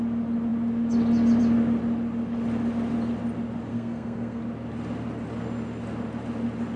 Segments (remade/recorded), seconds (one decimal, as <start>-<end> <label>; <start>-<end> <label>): 0.0-3.7 recorded; 3.7-4.4 remade; 4.4-6.8 recorded

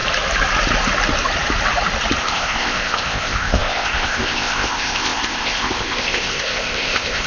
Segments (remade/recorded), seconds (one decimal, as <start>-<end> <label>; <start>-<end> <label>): 0.0-2.2 recorded; 2.2-7.3 remade